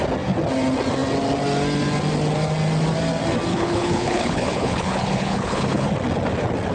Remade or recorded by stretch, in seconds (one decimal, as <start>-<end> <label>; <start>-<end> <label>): 0.0-3.5 recorded; 3.5-5.9 remade; 5.9-6.7 recorded

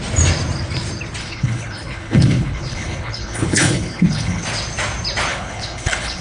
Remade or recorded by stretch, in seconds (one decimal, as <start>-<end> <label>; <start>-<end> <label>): 0.0-1.2 recorded; 1.2-4.4 remade; 4.4-5.3 recorded; 5.3-6.2 remade

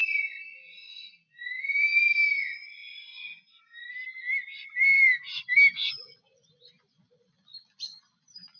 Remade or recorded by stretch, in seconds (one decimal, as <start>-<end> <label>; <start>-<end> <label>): 0.0-8.6 recorded

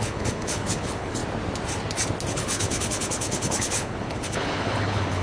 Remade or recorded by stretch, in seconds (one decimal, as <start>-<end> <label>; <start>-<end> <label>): 0.0-1.2 remade; 1.2-2.3 recorded; 2.3-5.2 remade

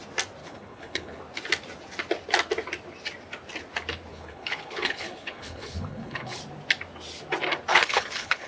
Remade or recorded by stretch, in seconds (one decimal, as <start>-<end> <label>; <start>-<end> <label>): 0.0-0.4 recorded; 0.4-1.2 remade; 1.2-4.1 recorded; 4.1-6.4 remade; 6.4-7.7 recorded; 7.7-8.5 remade

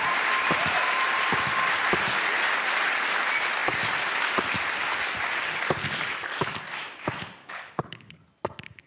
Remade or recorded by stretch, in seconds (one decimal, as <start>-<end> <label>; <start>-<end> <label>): 0.0-7.4 recorded; 7.4-8.2 remade; 8.2-8.9 recorded

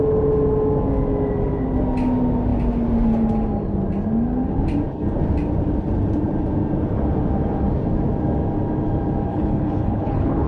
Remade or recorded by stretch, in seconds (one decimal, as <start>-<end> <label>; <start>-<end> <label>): 0.0-9.3 recorded; 9.3-10.5 remade